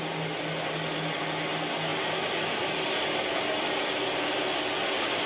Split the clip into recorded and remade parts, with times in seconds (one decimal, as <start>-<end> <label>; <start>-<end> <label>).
0.0-5.3 recorded